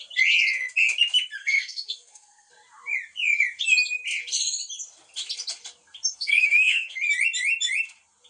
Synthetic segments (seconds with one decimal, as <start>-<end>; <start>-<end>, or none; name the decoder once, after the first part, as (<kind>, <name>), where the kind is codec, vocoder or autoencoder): 1.4-2.5 (codec, SNAC); 6.1-7.0